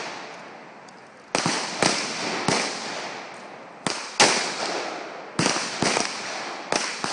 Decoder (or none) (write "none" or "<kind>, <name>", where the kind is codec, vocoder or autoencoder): none